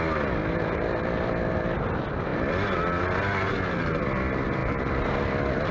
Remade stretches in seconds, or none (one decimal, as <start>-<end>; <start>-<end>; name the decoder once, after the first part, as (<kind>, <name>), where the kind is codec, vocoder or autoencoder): none